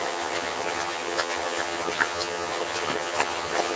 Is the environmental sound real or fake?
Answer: fake